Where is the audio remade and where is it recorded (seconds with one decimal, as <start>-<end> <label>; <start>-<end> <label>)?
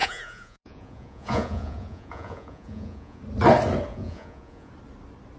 0.0-3.2 remade; 3.2-3.9 recorded; 3.9-4.7 remade; 4.7-5.4 recorded